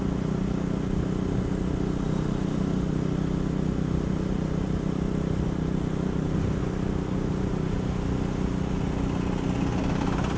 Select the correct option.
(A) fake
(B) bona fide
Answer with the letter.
B